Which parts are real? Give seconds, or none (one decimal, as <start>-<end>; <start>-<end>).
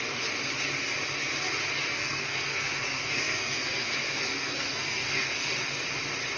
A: 0.0-1.9; 5.7-6.4